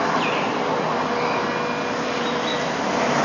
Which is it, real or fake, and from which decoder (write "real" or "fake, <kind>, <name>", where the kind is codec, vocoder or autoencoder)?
real